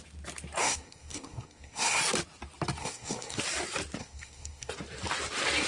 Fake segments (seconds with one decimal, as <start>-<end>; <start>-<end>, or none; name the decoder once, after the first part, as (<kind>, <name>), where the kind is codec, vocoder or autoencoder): 0.6-2.0 (codec, SNAC); 2.8-3.4; 4.0-4.7